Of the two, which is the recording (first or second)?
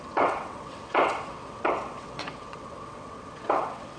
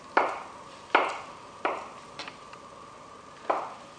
second